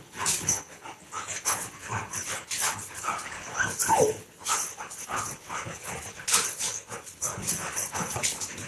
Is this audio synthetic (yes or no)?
yes